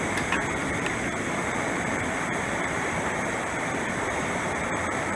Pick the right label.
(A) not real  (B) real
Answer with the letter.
A